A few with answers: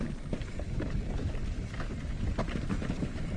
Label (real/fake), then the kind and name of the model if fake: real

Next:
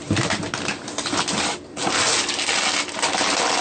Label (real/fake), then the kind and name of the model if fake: real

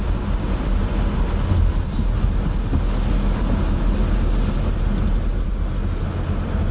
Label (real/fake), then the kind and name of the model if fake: real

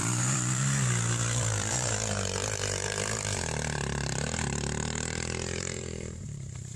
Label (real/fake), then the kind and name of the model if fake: fake, vocoder, BigVGAN v2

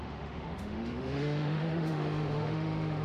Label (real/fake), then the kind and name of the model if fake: fake, autoencoder, DAC-VAE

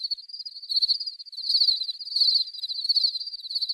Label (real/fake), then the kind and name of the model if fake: real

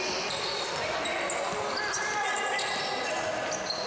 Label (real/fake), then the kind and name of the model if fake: real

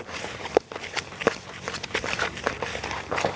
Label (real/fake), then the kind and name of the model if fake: real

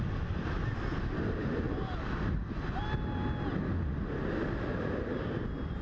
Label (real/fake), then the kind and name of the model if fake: real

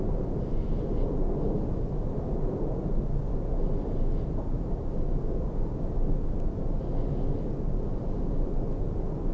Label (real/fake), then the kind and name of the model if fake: real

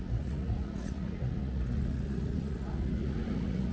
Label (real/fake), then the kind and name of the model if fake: fake, vocoder, Vocos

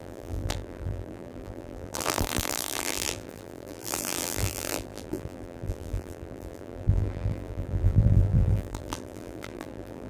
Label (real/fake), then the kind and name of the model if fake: fake, vocoder, BigVGAN v2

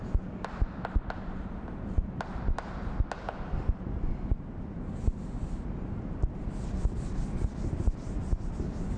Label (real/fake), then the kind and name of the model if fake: real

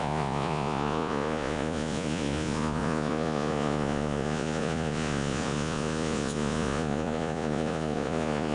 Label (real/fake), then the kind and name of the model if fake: fake, vocoder, Vocos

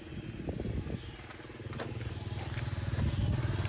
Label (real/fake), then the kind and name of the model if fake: real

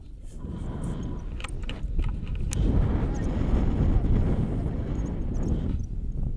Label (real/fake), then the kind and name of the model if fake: real